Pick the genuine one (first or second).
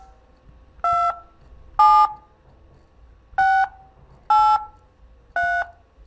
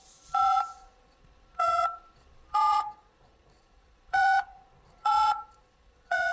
first